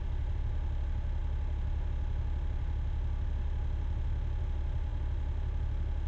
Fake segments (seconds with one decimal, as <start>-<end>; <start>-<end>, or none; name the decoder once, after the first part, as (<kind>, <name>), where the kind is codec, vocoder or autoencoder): none